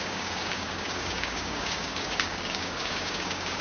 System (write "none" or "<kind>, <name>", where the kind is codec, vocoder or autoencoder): codec, DAC